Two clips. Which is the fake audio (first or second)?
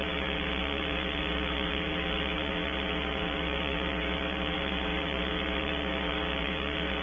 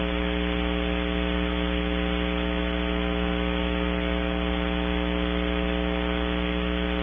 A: first